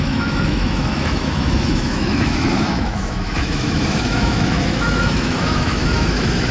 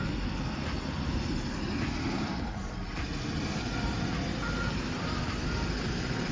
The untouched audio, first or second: second